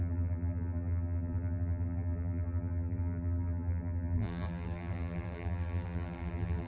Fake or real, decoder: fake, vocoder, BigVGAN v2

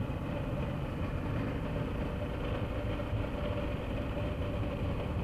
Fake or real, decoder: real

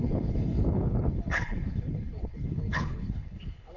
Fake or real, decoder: fake, codec, HILCodec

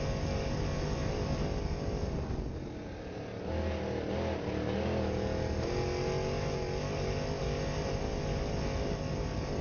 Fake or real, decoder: real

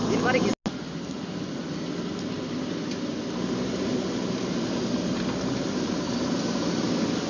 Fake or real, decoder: real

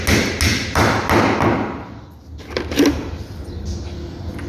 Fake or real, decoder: real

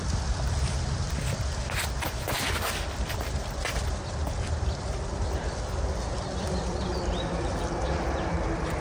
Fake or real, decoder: fake, vocoder, BigVGAN v2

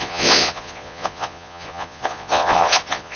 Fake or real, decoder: fake, vocoder, Vocos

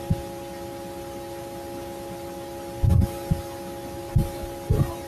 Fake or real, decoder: real